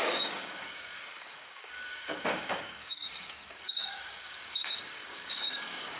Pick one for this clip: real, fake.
fake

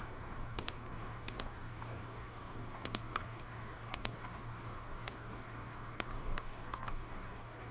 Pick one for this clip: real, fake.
fake